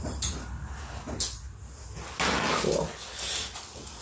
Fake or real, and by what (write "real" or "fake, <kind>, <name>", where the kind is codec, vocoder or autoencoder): real